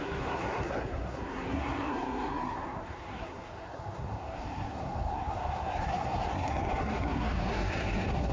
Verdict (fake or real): fake